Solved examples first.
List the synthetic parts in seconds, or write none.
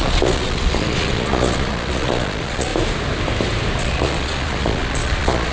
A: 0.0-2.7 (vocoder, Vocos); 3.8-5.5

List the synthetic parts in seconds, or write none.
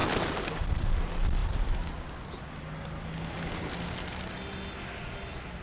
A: 0.0-0.6 (vocoder, BigVGAN v2)